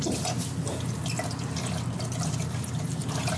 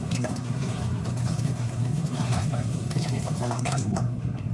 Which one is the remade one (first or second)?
second